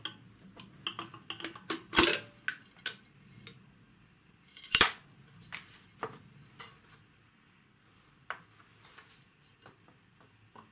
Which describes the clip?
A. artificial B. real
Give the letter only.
B